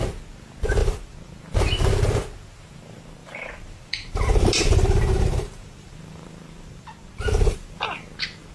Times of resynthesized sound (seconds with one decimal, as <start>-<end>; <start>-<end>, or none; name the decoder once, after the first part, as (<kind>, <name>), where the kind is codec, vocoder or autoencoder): 0.8-1.4 (vocoder, BigVGAN v2); 3.2-7.9